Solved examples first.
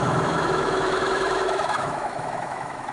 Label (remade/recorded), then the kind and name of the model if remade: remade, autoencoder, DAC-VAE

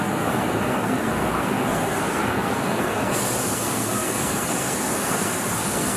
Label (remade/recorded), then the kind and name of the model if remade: remade, codec, SNAC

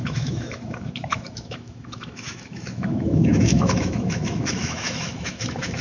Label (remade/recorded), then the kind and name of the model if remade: remade, autoencoder, DAC-VAE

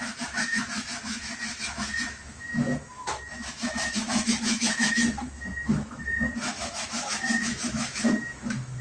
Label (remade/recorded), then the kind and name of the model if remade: remade, autoencoder, DAC-VAE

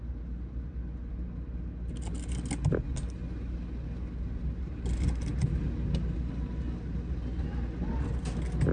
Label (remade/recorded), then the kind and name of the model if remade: recorded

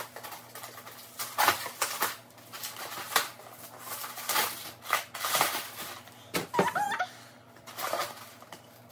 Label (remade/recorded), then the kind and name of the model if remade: recorded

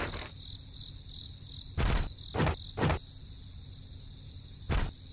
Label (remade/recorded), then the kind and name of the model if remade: recorded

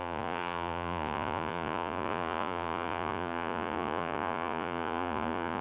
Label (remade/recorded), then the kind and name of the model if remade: remade, vocoder, Vocos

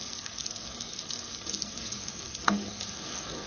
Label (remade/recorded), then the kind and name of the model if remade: remade, codec, SNAC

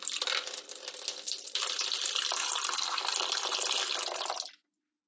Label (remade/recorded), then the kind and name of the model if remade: recorded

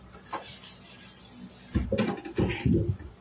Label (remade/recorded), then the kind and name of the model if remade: recorded